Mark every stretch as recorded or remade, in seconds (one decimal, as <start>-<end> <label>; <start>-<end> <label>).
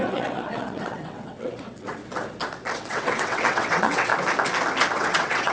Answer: 0.0-2.0 remade; 2.0-2.7 recorded; 2.7-4.1 remade; 4.1-4.9 recorded; 4.9-5.5 remade